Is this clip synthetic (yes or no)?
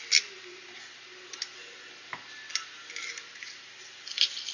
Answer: no